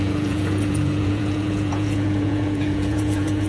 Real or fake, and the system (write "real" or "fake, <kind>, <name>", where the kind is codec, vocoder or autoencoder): fake, vocoder, Vocos